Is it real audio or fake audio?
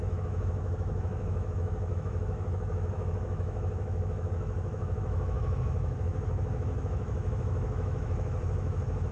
fake